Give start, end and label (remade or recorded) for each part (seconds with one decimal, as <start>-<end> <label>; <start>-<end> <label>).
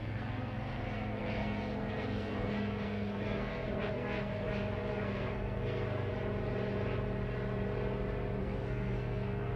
0.0-6.1 remade; 6.1-8.4 recorded; 8.4-9.6 remade